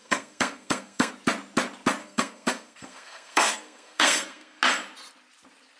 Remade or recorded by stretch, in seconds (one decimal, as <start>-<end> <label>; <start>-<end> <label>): 0.0-1.1 remade; 1.1-2.0 recorded; 2.0-4.6 remade; 4.6-5.8 recorded